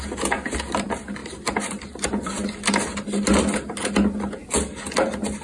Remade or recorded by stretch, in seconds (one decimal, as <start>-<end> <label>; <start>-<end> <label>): 0.0-5.4 recorded